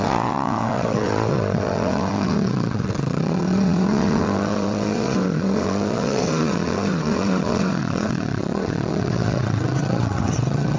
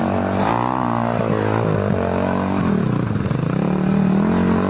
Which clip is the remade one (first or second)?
first